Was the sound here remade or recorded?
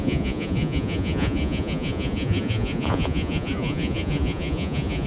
remade